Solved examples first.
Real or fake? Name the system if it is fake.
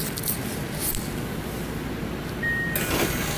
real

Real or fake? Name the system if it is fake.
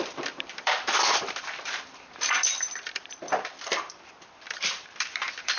fake, vocoder, BigVGAN v2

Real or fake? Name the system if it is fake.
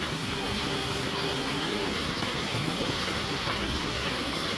fake, codec, SNAC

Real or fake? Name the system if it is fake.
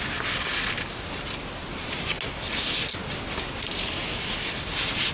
real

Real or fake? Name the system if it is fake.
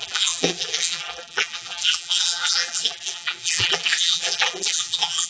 fake, vocoder, BigVGAN v2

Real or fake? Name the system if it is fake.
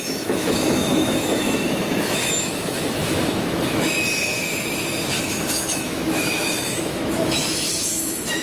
fake, autoencoder, DAC-VAE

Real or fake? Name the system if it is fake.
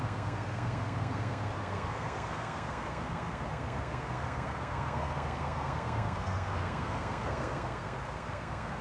fake, codec, SNAC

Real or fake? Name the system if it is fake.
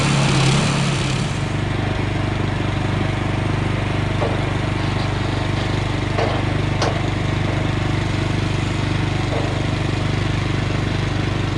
real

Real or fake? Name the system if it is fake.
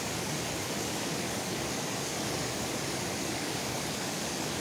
fake, codec, DAC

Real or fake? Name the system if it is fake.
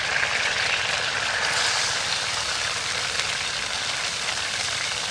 fake, vocoder, BigVGAN v2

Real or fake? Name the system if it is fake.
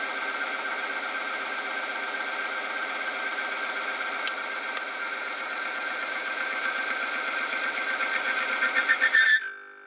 real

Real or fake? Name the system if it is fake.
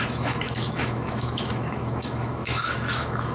fake, autoencoder, DAC-VAE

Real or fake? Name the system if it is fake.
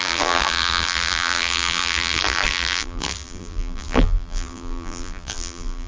fake, vocoder, BigVGAN v2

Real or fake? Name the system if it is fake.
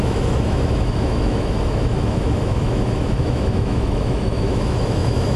fake, autoencoder, DAC-VAE